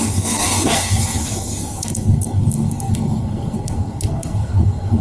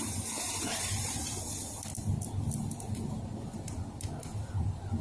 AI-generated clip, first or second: first